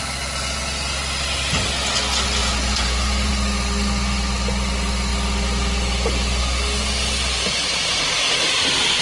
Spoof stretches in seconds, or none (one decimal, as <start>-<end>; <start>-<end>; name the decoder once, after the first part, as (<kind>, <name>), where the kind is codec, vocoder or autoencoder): 2.4-3.3 (vocoder, Vocos)